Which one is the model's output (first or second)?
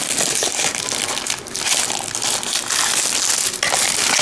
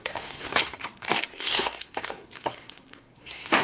second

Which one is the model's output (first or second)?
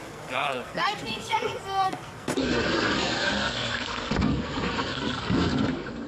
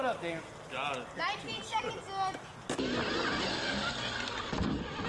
first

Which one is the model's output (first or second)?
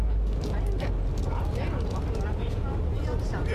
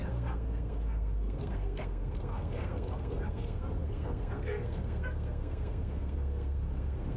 second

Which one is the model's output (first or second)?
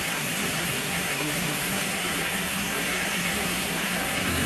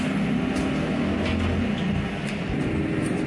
first